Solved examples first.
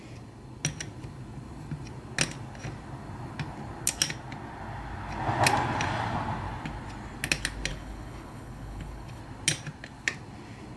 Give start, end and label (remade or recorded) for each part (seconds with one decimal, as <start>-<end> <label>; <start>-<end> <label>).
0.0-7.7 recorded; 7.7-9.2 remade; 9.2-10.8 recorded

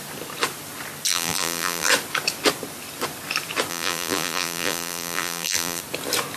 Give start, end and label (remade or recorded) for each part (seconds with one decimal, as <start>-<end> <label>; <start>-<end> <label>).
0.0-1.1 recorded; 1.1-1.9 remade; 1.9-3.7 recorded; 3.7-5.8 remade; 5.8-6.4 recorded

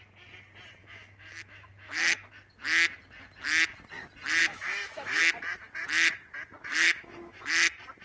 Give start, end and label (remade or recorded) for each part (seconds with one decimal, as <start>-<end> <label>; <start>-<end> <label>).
0.0-0.8 recorded; 0.8-2.3 remade; 2.3-4.4 recorded; 4.4-5.2 remade; 5.2-6.7 recorded; 6.7-7.5 remade; 7.5-8.0 recorded

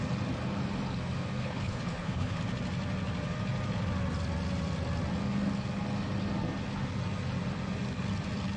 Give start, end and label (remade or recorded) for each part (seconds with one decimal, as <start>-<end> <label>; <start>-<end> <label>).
0.0-1.4 recorded; 1.4-2.4 remade; 2.4-8.6 recorded

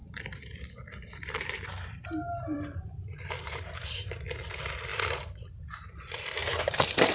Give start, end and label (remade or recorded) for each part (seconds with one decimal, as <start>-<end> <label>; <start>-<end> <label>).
0.0-4.1 remade; 4.1-4.9 recorded; 4.9-5.6 remade; 5.6-6.4 recorded; 6.4-7.1 remade